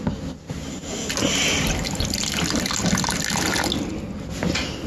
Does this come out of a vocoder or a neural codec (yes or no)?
no